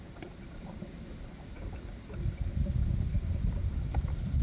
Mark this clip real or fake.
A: fake